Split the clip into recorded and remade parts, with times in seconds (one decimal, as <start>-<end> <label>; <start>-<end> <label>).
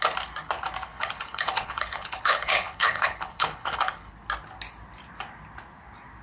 0.0-0.9 recorded; 0.9-4.1 remade; 4.1-6.2 recorded